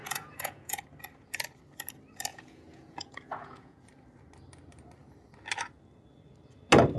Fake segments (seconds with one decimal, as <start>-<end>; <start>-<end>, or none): 0.0-0.8; 2.3-3.8